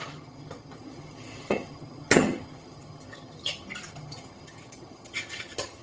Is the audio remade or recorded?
remade